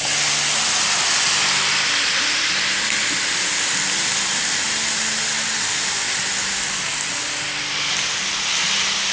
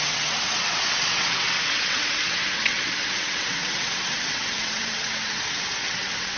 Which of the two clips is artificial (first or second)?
second